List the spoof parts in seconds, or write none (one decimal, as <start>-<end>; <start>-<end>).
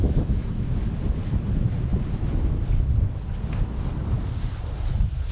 0.0-0.7